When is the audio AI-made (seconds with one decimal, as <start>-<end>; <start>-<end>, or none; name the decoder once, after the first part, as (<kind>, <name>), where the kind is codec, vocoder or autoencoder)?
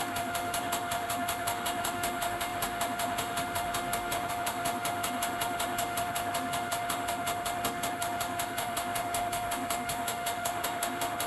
0.0-11.3 (autoencoder, DAC-VAE)